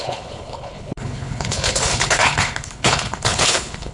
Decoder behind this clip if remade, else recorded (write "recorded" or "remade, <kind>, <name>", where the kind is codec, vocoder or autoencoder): remade, codec, HILCodec